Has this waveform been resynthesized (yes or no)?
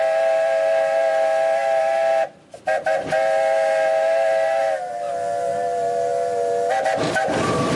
no